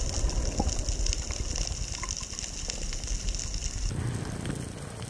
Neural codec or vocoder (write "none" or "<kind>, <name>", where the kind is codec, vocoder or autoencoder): none